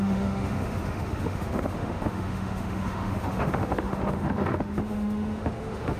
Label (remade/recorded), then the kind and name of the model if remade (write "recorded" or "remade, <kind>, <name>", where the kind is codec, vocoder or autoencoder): remade, autoencoder, DAC-VAE